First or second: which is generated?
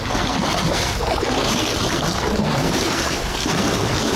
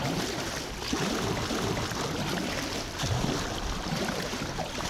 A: first